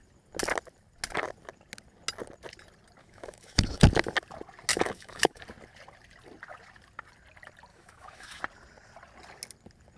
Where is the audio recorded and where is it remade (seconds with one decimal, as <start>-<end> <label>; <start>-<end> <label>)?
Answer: 0.0-3.0 recorded; 3.0-3.8 remade; 3.8-4.7 recorded; 4.7-5.4 remade; 5.4-7.7 recorded; 7.7-8.4 remade; 8.4-10.0 recorded